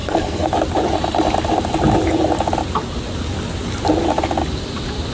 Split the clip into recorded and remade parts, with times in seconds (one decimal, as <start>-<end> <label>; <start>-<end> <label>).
0.0-0.5 remade; 0.5-5.1 recorded